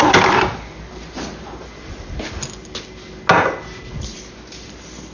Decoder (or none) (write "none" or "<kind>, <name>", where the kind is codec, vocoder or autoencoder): none